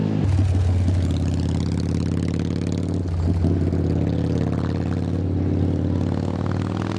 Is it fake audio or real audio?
real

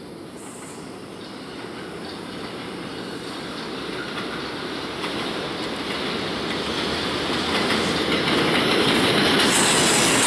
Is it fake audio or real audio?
real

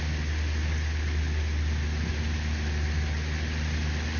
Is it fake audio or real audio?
real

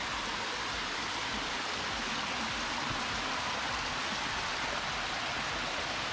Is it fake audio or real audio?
real